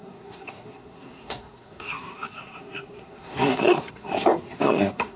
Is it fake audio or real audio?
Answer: fake